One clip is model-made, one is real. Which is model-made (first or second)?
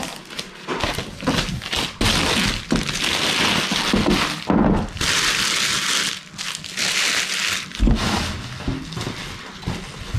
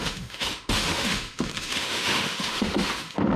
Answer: second